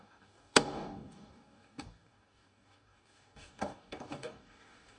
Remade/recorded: remade